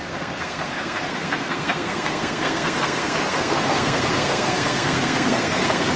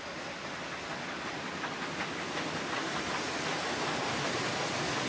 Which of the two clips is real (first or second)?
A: second